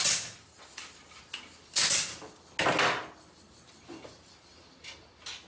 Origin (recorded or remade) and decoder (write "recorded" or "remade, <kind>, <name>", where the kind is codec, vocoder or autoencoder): recorded